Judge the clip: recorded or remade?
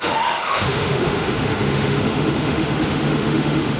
remade